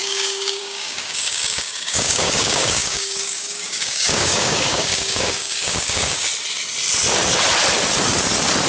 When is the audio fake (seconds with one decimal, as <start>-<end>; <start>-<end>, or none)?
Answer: 0.0-6.3